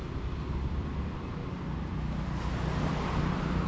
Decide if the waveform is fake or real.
real